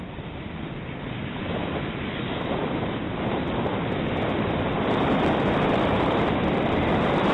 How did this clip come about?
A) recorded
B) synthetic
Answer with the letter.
B